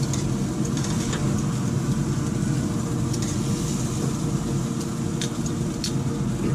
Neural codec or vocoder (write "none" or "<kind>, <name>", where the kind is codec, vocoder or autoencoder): none